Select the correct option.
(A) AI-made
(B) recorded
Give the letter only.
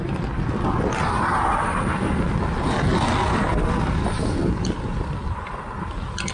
B